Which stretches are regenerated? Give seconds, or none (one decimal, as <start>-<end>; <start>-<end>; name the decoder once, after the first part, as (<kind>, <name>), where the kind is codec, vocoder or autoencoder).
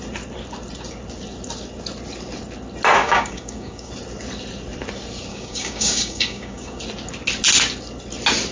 3.0-3.9 (codec, DAC); 5.3-6.8